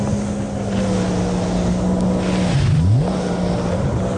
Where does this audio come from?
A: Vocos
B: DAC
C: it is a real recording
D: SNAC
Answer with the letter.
C